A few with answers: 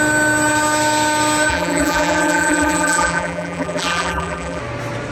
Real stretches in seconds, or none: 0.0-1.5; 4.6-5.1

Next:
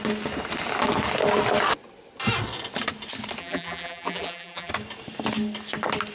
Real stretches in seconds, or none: 0.0-3.4; 4.7-6.1

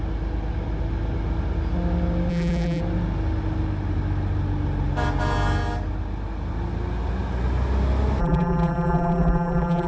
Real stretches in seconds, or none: 0.0-2.3; 2.8-8.2